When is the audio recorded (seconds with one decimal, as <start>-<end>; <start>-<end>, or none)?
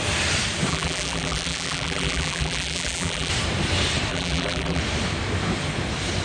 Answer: 0.0-0.7; 3.3-4.1; 4.8-6.2